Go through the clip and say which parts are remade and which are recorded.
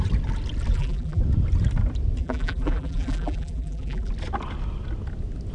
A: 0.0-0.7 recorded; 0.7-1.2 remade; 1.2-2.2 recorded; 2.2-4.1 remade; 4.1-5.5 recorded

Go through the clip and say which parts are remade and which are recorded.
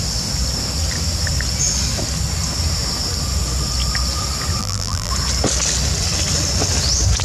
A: 0.0-4.6 recorded; 4.6-5.1 remade; 5.1-7.2 recorded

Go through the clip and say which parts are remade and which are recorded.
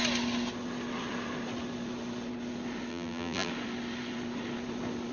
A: 0.0-2.9 recorded; 2.9-3.5 remade; 3.5-5.1 recorded